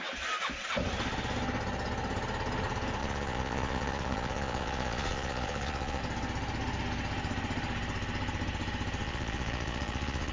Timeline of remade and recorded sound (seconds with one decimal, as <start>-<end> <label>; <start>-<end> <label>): 0.0-3.0 recorded; 3.0-6.0 remade; 6.0-9.0 recorded; 9.0-10.3 remade

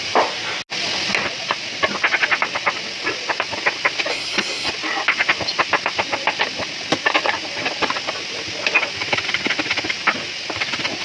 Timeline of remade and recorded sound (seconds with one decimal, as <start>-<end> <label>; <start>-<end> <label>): 0.0-4.1 recorded; 4.1-4.7 remade; 4.7-11.0 recorded

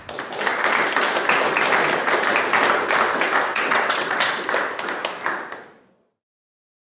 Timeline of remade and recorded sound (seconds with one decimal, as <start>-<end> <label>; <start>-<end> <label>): 0.0-3.5 recorded; 3.5-4.2 remade; 4.2-6.8 recorded

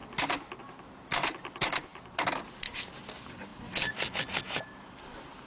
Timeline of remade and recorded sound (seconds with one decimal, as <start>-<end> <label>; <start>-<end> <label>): 0.0-0.6 recorded; 0.6-3.5 remade; 3.5-4.6 recorded; 4.6-5.5 remade

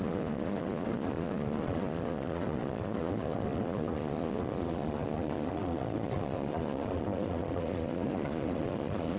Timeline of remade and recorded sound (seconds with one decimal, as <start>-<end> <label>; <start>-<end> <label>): 0.0-9.2 remade

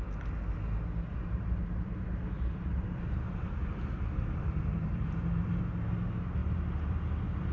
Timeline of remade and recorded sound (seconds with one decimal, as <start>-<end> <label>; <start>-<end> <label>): 0.0-1.1 recorded; 1.1-5.6 remade; 5.6-6.4 recorded; 6.4-7.5 remade

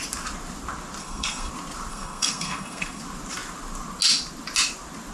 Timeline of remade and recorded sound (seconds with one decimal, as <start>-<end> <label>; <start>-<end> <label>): 0.0-1.0 recorded; 1.0-1.5 remade; 1.5-1.9 recorded; 1.9-3.0 remade; 3.0-5.1 recorded

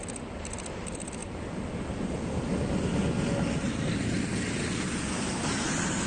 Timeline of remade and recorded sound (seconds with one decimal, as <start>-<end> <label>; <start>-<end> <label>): 0.0-6.1 recorded